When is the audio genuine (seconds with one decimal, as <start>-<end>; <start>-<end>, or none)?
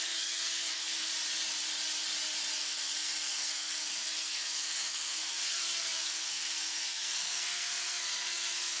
1.1-2.6